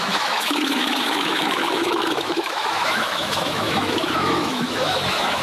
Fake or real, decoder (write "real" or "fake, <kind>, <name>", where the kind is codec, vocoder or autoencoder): fake, autoencoder, DAC-VAE